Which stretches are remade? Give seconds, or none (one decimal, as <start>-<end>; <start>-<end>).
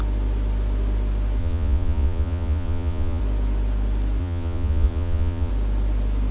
1.4-3.2; 4.2-5.5